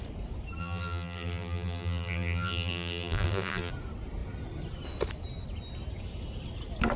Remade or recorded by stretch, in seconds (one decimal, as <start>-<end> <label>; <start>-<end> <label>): 0.0-0.6 recorded; 0.6-3.7 remade; 3.7-7.0 recorded